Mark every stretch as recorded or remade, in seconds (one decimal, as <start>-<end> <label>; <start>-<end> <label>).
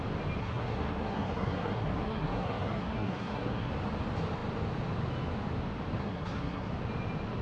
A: 0.0-0.4 recorded; 0.4-3.7 remade; 3.7-6.0 recorded; 6.0-6.7 remade; 6.7-7.4 recorded